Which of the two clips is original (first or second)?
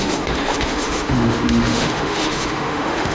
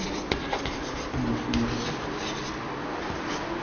second